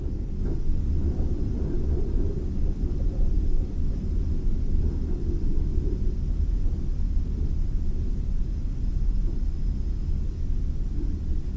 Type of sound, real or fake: real